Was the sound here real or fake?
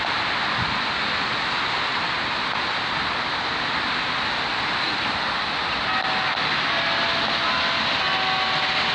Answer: real